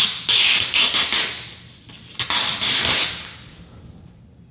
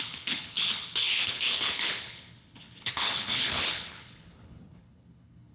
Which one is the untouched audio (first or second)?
first